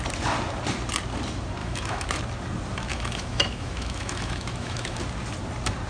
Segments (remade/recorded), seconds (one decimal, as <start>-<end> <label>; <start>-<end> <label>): 0.0-1.6 recorded; 1.6-2.2 remade; 2.2-2.9 recorded; 2.9-5.0 remade; 5.0-5.9 recorded